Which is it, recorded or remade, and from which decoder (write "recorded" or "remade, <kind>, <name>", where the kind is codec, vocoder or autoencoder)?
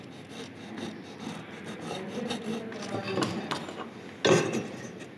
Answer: recorded